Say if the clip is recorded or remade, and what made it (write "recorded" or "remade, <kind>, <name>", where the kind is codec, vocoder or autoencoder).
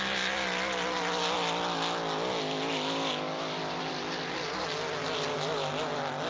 recorded